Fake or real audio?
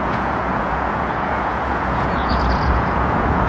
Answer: fake